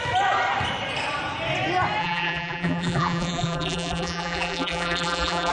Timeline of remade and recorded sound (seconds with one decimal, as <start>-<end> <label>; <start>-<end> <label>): 0.0-2.0 recorded; 2.0-5.5 remade